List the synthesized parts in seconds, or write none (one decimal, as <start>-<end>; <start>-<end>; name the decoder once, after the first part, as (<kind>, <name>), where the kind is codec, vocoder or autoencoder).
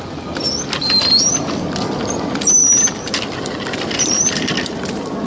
2.6-4.5 (vocoder, BigVGAN v2)